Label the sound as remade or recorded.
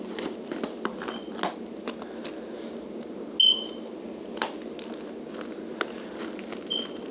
recorded